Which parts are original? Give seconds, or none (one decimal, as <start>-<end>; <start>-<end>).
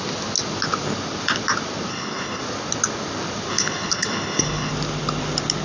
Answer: 0.0-1.9; 2.4-3.5; 4.7-5.6